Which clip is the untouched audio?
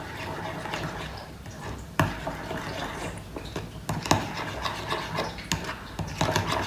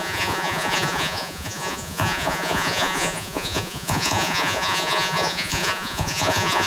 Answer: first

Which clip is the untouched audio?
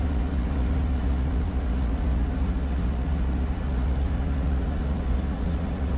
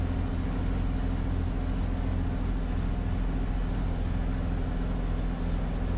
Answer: second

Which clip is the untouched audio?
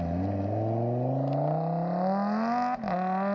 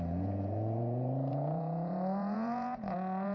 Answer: first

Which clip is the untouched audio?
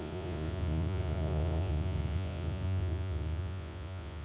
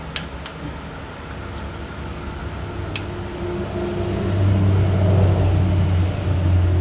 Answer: second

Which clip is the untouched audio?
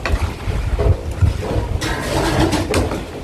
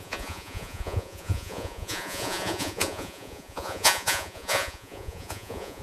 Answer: first